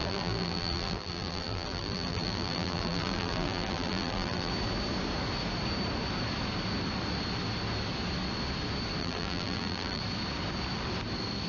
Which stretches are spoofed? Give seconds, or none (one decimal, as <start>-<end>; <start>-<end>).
0.0-4.5; 9.0-10.0